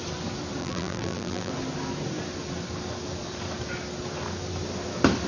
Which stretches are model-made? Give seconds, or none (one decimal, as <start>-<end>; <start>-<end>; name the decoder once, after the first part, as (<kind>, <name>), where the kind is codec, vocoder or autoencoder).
0.6-1.5 (vocoder, BigVGAN v2)